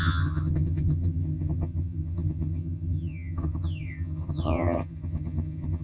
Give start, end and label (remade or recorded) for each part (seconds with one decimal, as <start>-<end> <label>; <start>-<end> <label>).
0.0-5.8 remade